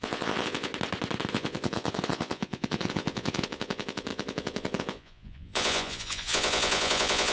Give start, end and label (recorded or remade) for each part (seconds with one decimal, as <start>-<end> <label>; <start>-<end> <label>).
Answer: 0.0-0.7 remade; 0.7-1.3 recorded; 1.3-7.3 remade

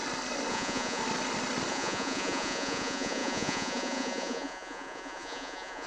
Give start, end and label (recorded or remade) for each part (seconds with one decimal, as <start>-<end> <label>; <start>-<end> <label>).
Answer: 0.0-0.5 recorded; 0.5-1.0 remade; 1.0-1.7 recorded; 1.7-5.9 remade